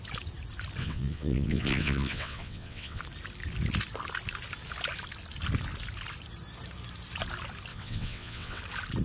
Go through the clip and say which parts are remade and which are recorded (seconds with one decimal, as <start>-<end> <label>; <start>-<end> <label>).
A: 0.0-0.8 recorded; 0.8-3.0 remade; 3.0-7.7 recorded; 7.7-8.6 remade; 8.6-9.0 recorded